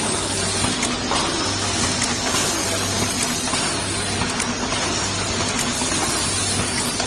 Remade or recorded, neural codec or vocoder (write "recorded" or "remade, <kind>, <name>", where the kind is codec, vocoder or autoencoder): recorded